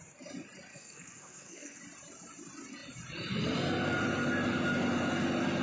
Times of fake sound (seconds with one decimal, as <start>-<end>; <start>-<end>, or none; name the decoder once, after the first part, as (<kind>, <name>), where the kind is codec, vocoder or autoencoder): 0.7-1.8 (codec, SNAC)